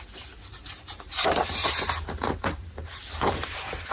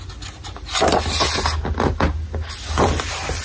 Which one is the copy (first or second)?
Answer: first